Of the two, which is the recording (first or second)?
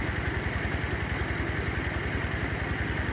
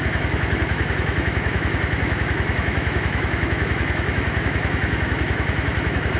first